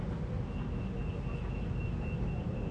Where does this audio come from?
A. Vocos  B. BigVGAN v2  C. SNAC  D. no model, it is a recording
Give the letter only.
D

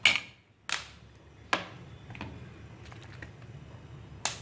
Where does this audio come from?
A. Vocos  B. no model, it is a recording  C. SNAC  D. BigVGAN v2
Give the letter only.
B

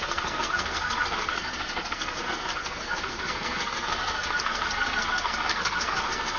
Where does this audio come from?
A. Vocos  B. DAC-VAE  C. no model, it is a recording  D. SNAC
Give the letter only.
D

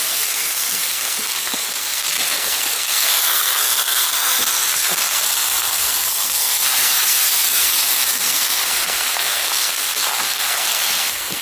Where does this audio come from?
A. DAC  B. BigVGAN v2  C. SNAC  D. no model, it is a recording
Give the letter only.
C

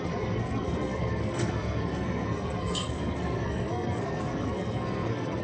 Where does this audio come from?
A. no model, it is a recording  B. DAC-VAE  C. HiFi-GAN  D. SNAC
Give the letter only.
D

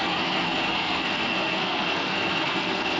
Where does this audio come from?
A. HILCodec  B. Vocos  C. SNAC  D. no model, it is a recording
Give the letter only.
C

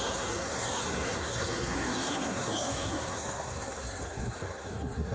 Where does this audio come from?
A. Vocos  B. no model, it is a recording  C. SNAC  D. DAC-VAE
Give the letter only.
C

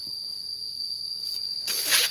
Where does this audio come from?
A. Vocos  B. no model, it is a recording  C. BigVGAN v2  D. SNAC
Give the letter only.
B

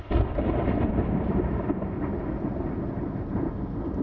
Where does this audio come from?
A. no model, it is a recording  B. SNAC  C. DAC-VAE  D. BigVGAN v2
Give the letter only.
A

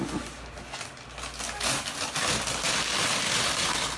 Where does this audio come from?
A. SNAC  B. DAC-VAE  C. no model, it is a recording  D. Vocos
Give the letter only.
C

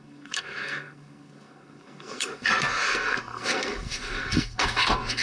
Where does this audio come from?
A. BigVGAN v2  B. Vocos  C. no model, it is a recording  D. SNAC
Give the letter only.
D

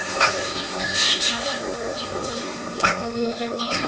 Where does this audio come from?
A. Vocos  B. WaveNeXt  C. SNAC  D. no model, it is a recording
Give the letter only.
C